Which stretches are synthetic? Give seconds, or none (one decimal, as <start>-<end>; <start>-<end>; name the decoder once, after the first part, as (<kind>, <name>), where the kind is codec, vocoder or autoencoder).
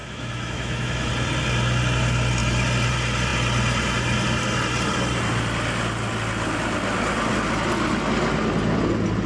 0.0-1.1 (autoencoder, DAC-VAE)